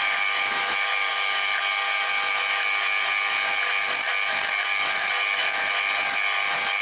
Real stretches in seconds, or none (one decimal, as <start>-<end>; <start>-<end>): 0.0-6.8